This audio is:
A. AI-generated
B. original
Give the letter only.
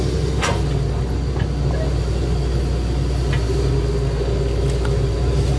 B